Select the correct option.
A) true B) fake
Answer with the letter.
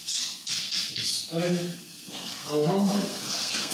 B